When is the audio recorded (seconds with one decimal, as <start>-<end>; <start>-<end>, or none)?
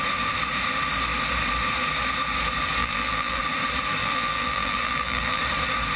0.0-2.8; 3.4-4.0; 5.4-6.0